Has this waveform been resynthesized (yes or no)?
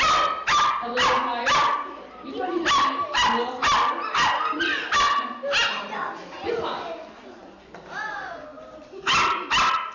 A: no